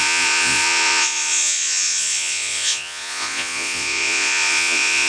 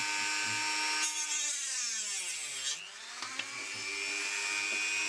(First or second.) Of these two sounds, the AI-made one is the first